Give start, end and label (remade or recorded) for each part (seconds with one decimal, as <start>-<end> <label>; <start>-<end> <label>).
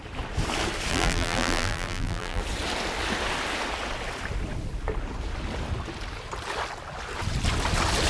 0.0-0.9 recorded; 0.9-2.4 remade; 2.4-8.1 recorded